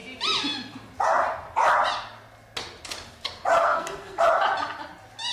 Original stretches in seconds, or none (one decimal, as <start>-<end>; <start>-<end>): 0.0-3.6; 4.2-5.3